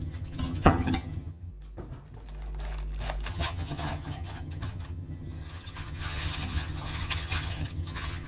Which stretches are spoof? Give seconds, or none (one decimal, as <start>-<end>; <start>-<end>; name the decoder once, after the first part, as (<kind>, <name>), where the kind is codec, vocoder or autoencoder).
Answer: 0.0-1.5 (vocoder, HiFi-GAN); 3.3-8.3